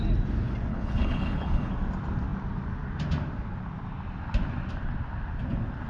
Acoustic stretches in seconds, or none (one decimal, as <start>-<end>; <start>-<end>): 0.0-0.7; 1.7-5.9